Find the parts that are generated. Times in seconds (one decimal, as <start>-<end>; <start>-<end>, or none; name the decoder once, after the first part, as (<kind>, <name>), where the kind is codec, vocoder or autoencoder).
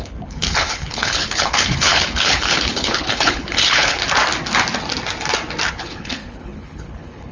0.0-4.0 (codec, HILCodec); 5.7-7.3